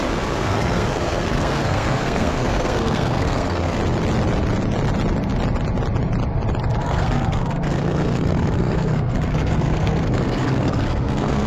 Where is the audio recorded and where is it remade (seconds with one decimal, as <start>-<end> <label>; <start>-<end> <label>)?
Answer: 0.0-3.8 remade; 3.8-6.8 recorded; 6.8-11.5 remade